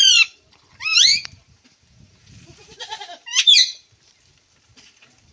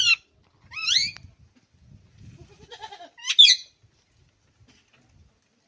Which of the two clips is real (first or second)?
second